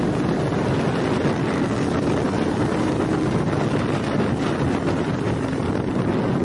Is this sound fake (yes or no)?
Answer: no